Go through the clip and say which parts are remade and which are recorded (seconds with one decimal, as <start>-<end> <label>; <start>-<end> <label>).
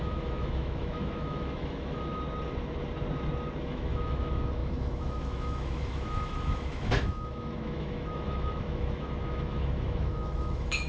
0.0-2.1 remade; 2.1-3.6 recorded; 3.6-10.9 remade